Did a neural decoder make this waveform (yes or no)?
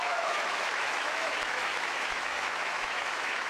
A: yes